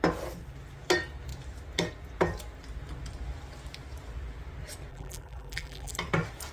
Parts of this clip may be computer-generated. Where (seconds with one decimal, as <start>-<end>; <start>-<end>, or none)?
4.9-5.9